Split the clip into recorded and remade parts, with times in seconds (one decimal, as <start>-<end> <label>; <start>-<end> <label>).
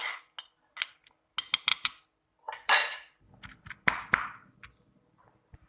0.0-1.7 recorded; 1.7-3.7 remade; 3.7-5.7 recorded